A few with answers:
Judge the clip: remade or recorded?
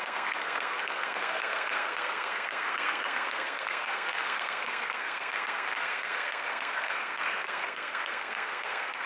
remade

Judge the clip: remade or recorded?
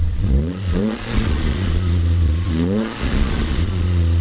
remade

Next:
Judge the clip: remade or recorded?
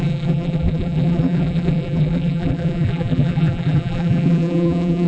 remade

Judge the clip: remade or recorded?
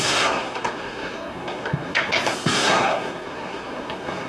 remade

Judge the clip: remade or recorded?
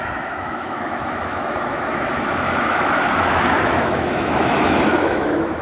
remade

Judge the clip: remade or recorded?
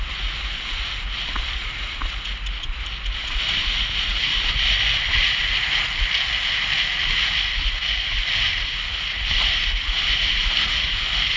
recorded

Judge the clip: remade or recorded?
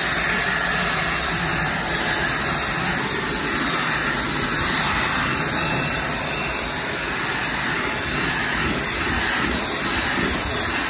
recorded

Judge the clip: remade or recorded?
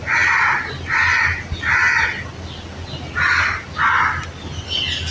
recorded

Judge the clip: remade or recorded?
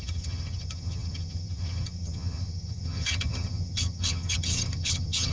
remade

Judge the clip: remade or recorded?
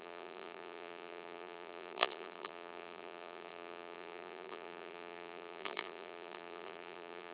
remade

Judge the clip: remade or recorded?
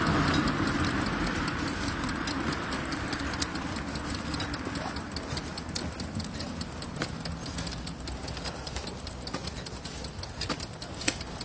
recorded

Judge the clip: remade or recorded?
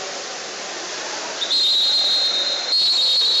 recorded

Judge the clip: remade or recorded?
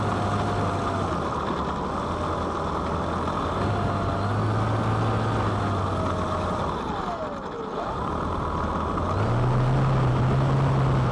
recorded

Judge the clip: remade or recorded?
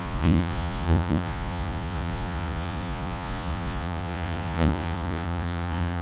remade